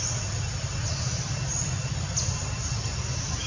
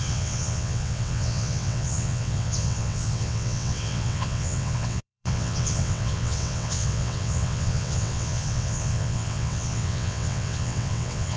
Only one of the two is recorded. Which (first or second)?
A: first